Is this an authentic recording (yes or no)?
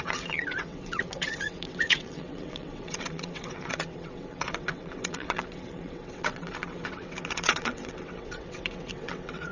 no